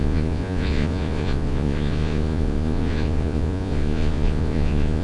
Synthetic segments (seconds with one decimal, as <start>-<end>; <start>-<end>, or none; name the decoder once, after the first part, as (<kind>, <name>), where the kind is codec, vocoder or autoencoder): 0.0-5.0 (vocoder, Vocos)

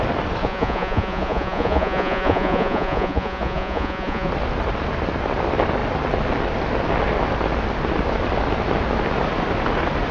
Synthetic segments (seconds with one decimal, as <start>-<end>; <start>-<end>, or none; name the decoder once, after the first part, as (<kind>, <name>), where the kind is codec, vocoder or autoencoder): 0.4-4.3 (vocoder, Vocos)

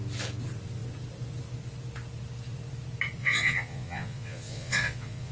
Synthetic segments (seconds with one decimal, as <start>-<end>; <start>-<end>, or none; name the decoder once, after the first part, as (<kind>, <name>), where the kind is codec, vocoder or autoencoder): 3.2-5.3 (vocoder, Vocos)